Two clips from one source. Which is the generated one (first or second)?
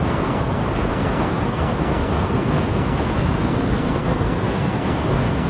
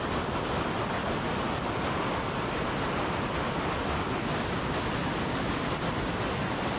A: first